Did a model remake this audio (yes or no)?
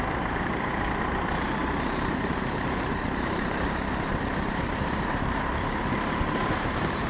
yes